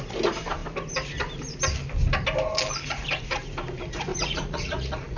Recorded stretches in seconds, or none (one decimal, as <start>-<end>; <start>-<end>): 0.0-4.1